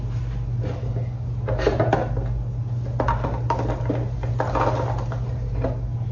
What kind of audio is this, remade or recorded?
recorded